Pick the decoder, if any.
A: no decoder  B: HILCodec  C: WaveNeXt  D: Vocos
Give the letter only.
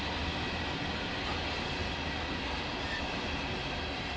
A